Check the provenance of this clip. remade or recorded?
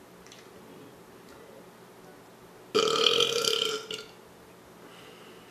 recorded